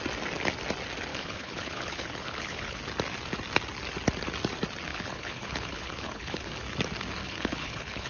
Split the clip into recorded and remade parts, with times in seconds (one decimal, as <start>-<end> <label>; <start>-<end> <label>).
0.0-1.1 recorded; 1.1-2.8 remade; 2.8-4.9 recorded; 4.9-6.5 remade; 6.5-7.2 recorded; 7.2-8.1 remade